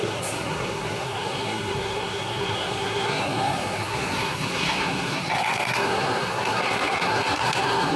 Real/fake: fake